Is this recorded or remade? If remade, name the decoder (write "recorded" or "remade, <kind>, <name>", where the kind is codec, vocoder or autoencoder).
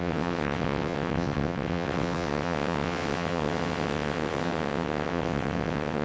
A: remade, vocoder, WaveNeXt